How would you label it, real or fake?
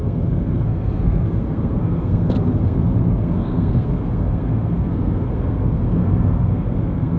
fake